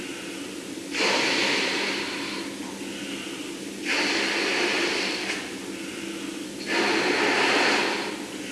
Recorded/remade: recorded